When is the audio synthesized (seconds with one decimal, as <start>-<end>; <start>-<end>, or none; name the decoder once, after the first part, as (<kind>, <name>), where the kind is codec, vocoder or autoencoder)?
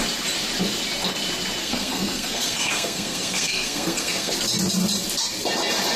1.6-4.3 (codec, SNAC)